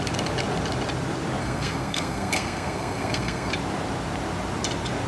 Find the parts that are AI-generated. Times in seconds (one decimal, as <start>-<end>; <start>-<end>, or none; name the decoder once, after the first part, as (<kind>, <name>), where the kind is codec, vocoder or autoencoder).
1.4-3.5 (codec, SNAC)